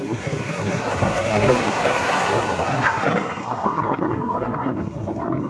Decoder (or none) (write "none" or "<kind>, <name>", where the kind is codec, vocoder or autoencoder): codec, SNAC